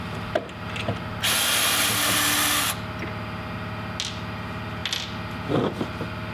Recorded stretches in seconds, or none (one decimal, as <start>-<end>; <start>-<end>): 0.0-6.3